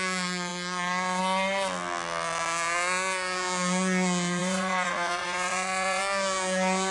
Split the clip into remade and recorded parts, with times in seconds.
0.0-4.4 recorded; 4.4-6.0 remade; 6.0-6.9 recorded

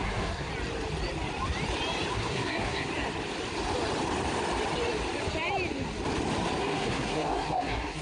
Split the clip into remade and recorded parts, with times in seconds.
0.0-0.5 remade; 0.5-2.1 recorded; 2.1-2.9 remade; 2.9-6.6 recorded; 6.6-8.0 remade

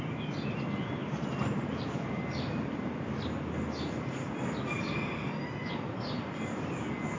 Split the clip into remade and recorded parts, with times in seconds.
0.0-1.0 recorded; 1.0-2.6 remade; 2.6-5.6 recorded; 5.6-6.7 remade; 6.7-7.2 recorded

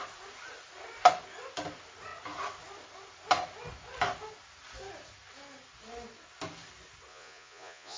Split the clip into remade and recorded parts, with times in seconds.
0.0-7.1 recorded; 7.1-8.0 remade